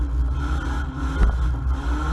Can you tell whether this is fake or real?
real